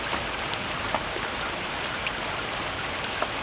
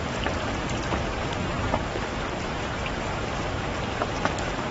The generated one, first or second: second